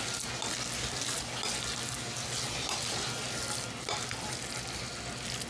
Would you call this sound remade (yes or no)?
no